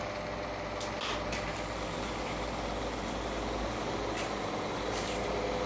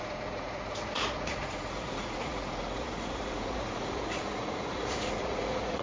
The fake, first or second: second